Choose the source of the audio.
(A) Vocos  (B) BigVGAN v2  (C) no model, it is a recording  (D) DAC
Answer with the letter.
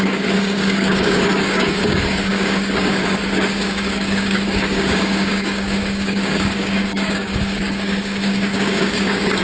D